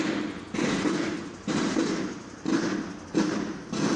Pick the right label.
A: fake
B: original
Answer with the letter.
B